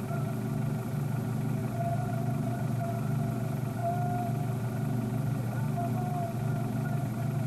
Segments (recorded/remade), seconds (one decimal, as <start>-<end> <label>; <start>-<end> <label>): 0.0-1.6 recorded; 1.6-2.9 remade; 2.9-7.5 recorded